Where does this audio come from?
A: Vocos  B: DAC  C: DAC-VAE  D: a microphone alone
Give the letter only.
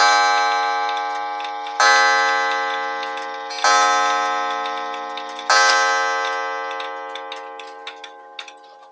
D